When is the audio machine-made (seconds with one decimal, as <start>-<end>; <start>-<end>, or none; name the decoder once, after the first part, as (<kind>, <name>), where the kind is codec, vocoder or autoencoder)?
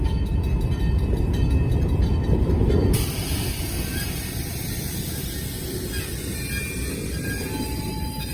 none